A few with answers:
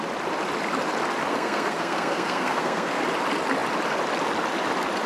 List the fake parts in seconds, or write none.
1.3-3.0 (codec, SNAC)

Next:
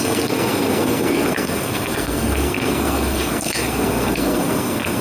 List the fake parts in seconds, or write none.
0.0-5.0 (codec, SNAC)

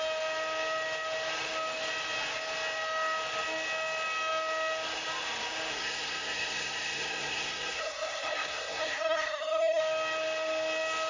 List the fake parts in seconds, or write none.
5.7-9.8 (codec, SNAC)

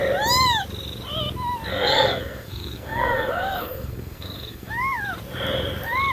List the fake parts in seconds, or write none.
1.7-4.7 (codec, SNAC)

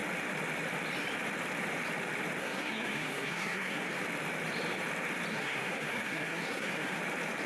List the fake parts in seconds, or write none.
2.4-3.9 (codec, SNAC); 5.3-7.0

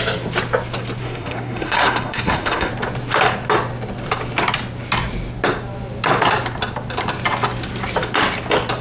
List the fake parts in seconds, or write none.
1.0-2.7 (codec, SNAC)

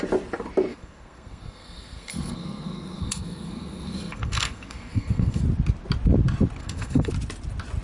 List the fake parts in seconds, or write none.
0.7-5.4 (codec, SNAC); 6.6-7.1

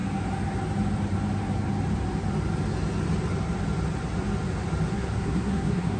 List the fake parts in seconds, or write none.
4.9-6.0 (codec, SNAC)